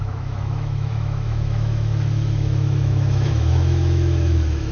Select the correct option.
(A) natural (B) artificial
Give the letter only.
B